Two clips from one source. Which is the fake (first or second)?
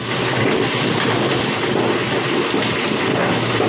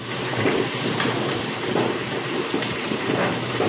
second